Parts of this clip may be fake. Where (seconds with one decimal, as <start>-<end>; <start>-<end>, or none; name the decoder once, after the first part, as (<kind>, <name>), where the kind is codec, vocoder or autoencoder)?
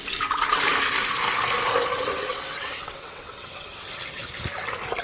2.3-3.9 (vocoder, WaveNeXt)